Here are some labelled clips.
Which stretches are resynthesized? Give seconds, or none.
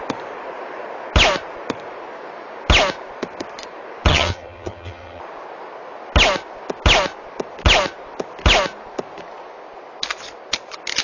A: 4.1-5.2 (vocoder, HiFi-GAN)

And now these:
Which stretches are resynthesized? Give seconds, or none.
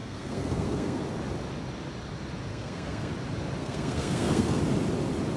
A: 0.0-1.0 (codec, SNAC); 2.5-3.1; 3.6-4.6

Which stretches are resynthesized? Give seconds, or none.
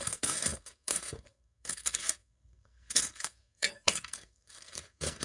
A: 0.0-5.2 (codec, SNAC)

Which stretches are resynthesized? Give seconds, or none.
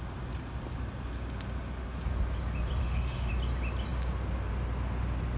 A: 2.8-3.3 (autoencoder, DAC-VAE)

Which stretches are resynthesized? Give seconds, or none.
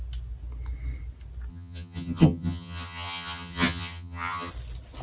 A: 1.5-4.5 (vocoder, HiFi-GAN)